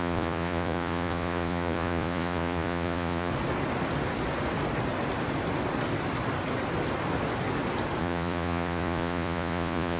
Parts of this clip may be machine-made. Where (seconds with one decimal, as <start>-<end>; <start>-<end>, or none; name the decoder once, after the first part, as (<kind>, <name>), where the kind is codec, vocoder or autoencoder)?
0.0-3.3 (vocoder, Vocos); 8.0-10.0